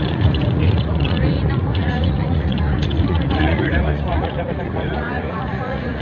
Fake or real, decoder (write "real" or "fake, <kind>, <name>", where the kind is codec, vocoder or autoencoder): fake, vocoder, Vocos